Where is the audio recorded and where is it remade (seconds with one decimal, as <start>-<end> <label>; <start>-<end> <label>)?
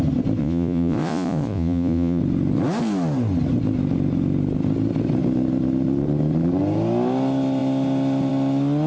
0.0-0.4 recorded; 0.4-2.2 remade; 2.2-8.9 recorded